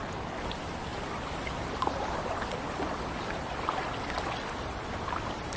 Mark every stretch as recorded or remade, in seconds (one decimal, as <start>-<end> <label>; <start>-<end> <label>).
0.0-5.6 recorded